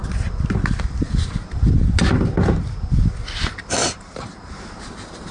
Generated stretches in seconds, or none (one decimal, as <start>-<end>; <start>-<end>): 3.8-4.5